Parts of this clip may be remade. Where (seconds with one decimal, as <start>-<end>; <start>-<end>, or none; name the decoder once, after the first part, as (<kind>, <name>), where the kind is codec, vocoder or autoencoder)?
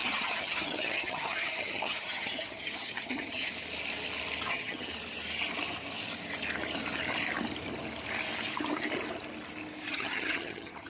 0.0-3.5 (vocoder, HiFi-GAN); 4.5-4.9; 9.9-10.9